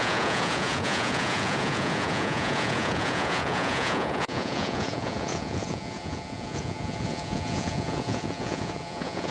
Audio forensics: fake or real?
fake